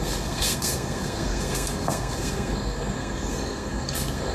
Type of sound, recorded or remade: remade